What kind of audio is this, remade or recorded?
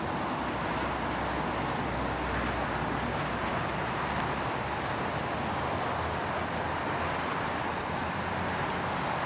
recorded